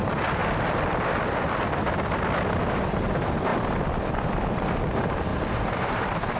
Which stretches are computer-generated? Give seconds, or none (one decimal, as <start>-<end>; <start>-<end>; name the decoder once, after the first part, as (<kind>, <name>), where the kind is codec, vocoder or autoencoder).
0.0-0.4 (vocoder, BigVGAN v2); 2.6-3.5; 4.1-5.3; 5.9-6.4